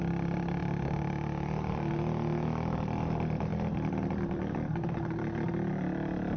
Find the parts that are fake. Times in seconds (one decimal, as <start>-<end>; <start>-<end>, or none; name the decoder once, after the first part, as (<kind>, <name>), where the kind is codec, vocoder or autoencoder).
none